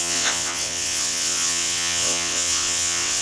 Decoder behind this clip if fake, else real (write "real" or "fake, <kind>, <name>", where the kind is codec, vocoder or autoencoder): fake, vocoder, WaveNeXt